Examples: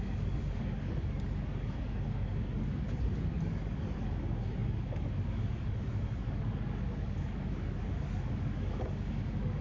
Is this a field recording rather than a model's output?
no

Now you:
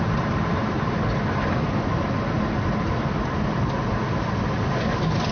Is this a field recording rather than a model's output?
yes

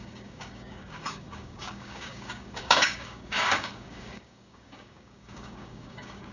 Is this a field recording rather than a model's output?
no